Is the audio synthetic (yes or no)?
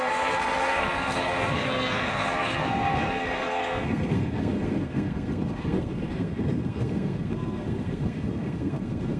yes